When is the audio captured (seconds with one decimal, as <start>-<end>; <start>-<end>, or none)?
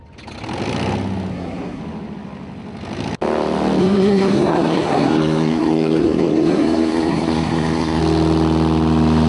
0.0-1.3; 1.8-3.8; 8.0-9.3